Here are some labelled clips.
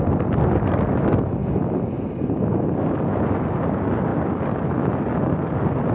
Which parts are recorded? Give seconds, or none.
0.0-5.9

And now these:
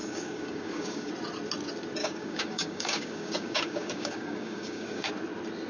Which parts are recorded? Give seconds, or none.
1.1-2.0; 5.1-5.7

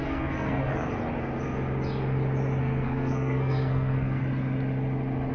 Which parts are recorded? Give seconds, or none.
0.7-2.6; 4.2-5.3

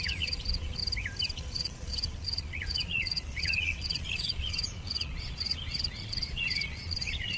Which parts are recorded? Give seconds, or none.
0.8-1.3

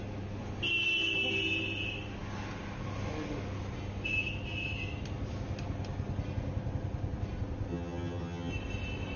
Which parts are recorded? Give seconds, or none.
0.0-7.7; 8.5-9.2

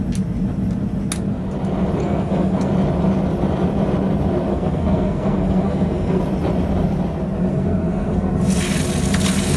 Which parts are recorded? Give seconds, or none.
0.0-2.0; 2.7-4.5; 6.2-7.5; 8.3-9.6

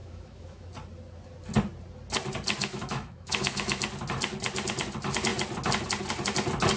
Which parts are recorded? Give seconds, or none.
0.7-2.6; 3.8-6.8